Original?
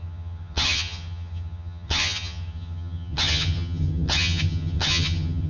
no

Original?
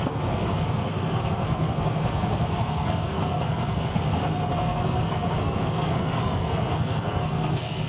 no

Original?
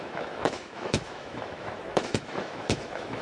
no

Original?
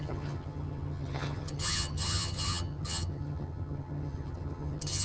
no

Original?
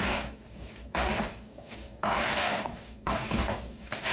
no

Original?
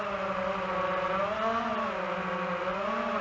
yes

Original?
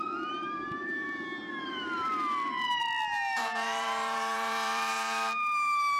no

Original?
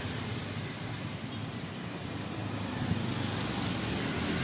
yes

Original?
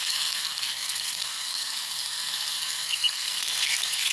no